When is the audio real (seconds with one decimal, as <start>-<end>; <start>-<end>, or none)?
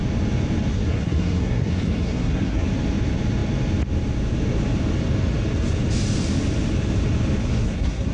0.0-0.7; 2.7-7.4